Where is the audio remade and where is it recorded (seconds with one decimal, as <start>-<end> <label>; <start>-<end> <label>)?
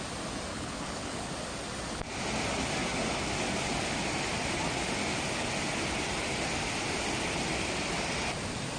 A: 0.0-0.5 recorded; 0.5-1.3 remade; 1.3-8.8 recorded